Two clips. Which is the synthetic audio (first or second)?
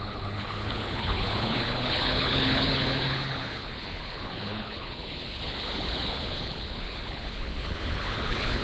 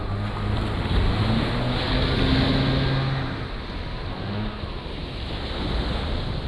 first